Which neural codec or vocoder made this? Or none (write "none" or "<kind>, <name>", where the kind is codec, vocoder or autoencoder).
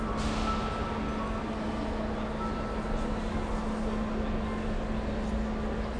none